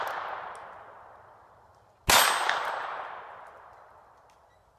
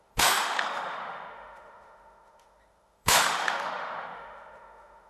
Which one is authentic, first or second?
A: first